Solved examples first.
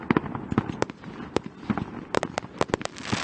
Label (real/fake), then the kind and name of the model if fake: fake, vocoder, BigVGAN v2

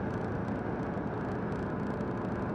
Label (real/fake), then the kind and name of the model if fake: real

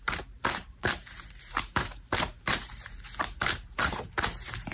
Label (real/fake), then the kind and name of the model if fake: fake, vocoder, BigVGAN v2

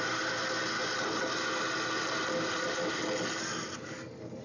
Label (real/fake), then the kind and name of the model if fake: real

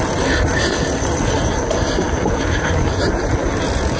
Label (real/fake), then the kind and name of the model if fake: real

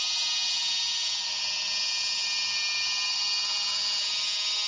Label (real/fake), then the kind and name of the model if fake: real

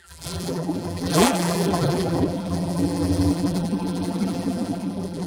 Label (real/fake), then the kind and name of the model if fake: fake, vocoder, BigVGAN v2